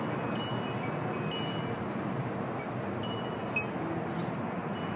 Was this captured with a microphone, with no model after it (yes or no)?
yes